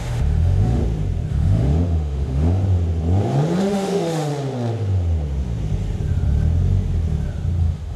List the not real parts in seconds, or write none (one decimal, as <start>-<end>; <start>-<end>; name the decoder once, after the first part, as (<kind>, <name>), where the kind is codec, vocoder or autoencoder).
0.0-0.8 (autoencoder, DAC-VAE); 1.3-2.6; 3.6-4.3; 7.6-8.0